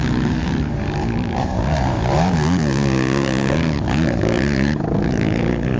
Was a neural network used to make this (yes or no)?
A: yes